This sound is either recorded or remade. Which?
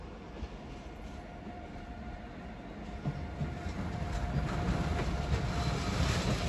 recorded